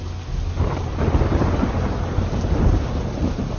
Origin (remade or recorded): recorded